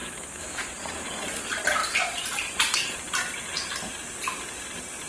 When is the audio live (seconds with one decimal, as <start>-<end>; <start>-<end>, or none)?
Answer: 0.6-5.1